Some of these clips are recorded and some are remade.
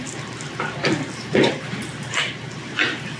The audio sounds recorded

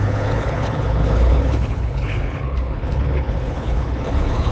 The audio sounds remade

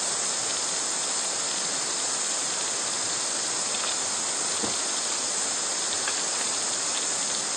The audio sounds recorded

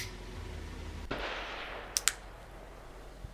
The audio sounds recorded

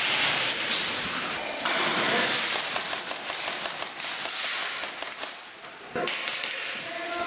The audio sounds recorded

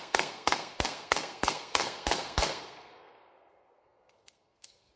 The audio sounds remade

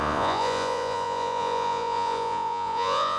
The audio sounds remade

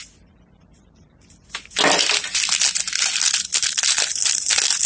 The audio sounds recorded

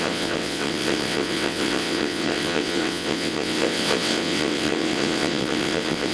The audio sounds remade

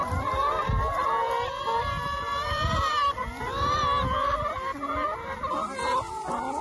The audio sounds recorded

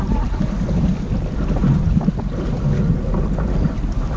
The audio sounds recorded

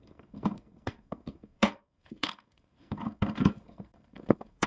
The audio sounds remade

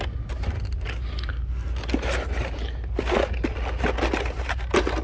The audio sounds recorded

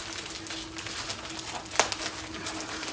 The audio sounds recorded